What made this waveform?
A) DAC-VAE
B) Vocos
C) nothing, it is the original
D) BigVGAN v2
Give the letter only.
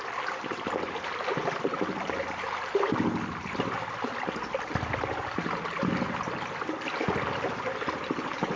C